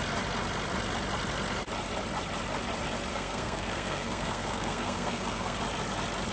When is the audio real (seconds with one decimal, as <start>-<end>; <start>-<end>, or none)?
0.0-3.1; 5.6-6.3